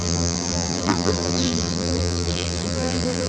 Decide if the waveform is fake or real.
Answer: fake